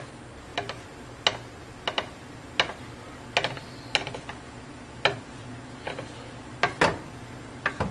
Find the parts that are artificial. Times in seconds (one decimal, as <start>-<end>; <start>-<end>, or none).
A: none